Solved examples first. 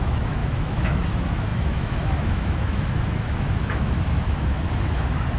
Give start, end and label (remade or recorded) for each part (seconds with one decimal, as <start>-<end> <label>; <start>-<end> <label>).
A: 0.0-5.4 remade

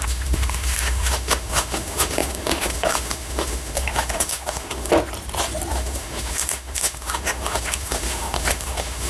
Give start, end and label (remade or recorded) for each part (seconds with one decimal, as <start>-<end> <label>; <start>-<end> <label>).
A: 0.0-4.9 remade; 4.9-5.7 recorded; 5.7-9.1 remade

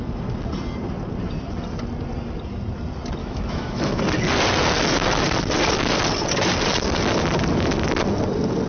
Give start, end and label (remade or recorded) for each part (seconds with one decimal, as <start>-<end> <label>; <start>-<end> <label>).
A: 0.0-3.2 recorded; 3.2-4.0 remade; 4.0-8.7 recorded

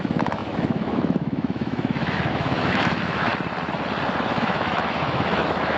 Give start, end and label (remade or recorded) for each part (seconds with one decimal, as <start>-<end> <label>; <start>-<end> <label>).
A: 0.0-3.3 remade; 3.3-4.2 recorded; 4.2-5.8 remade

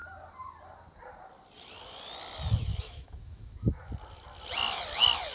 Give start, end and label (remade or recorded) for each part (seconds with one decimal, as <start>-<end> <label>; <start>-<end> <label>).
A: 0.0-2.7 recorded; 2.7-3.7 remade; 3.7-5.3 recorded